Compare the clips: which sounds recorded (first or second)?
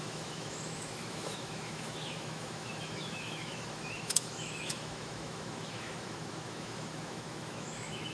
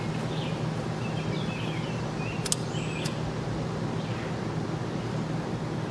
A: second